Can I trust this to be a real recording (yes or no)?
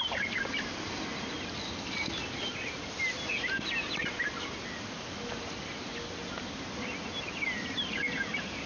yes